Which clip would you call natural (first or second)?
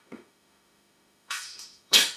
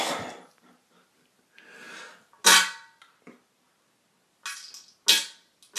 second